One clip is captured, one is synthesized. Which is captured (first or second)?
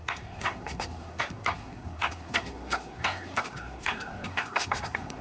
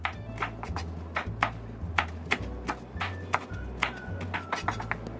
second